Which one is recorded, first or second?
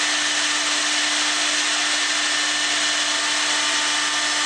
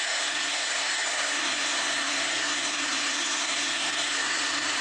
first